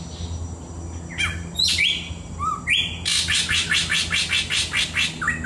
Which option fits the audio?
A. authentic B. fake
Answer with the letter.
A